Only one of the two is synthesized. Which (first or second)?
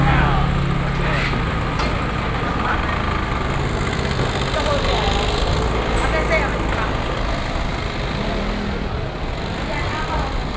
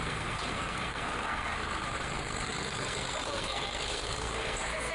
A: second